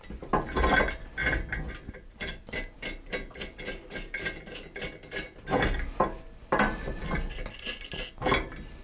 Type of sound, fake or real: real